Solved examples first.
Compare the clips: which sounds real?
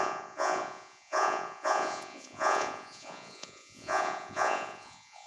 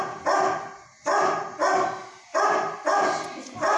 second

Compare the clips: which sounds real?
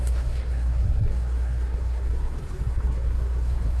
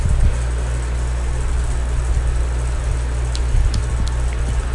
second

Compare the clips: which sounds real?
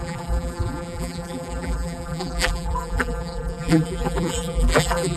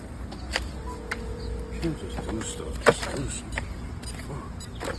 second